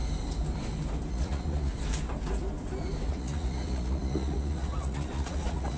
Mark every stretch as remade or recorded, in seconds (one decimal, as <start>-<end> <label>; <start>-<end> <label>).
0.0-1.1 recorded; 1.1-1.7 remade; 1.7-3.1 recorded; 3.1-5.8 remade